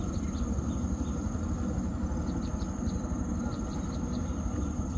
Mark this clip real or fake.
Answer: real